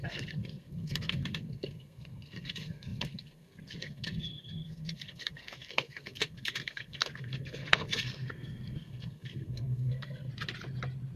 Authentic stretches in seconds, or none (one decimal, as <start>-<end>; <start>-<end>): 10.3-11.2